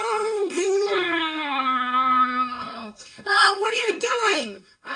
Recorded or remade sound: remade